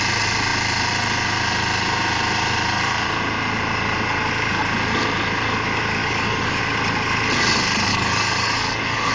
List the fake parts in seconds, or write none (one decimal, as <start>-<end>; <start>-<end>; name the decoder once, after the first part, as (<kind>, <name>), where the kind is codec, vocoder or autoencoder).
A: 6.0-6.6 (codec, DAC); 7.9-9.1